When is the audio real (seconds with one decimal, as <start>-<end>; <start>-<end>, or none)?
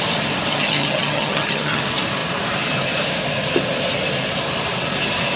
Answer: 0.0-0.5; 1.8-5.4